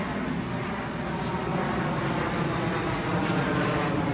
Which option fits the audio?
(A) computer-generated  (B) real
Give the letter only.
B